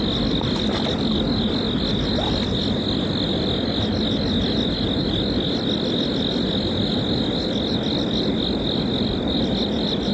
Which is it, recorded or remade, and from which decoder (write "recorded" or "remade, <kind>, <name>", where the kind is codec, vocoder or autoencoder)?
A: recorded